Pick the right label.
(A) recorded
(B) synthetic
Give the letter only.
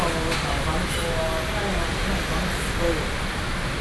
A